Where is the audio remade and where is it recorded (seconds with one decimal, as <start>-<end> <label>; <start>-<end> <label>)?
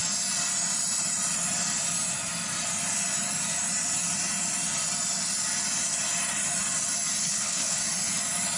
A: 0.0-7.2 recorded; 7.2-7.8 remade; 7.8-8.6 recorded